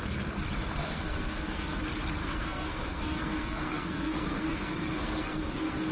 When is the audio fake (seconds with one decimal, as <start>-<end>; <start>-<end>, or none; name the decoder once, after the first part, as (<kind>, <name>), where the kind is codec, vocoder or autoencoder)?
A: 0.8-1.8 (codec, SNAC); 2.2-5.9